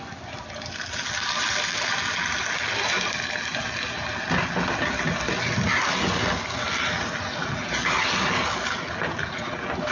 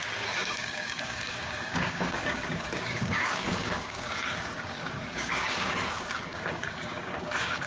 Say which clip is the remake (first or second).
second